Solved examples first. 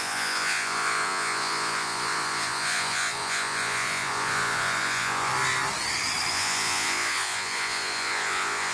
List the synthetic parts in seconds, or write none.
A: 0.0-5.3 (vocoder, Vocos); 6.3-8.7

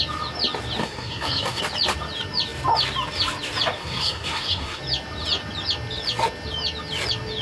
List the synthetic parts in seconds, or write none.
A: 0.8-1.6 (codec, SNAC); 3.8-4.8

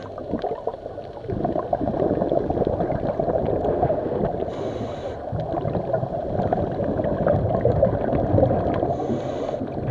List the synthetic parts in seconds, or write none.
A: 3.7-4.2 (codec, SNAC)

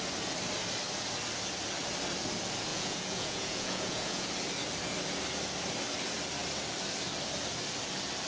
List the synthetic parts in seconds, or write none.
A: 2.7-4.3 (vocoder, Vocos)

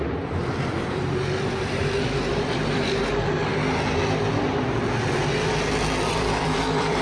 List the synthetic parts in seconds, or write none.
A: 0.0-3.5 (vocoder, BigVGAN v2); 6.1-7.0

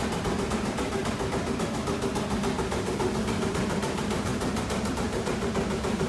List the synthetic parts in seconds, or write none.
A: 0.0-1.0 (vocoder, BigVGAN v2); 3.4-6.1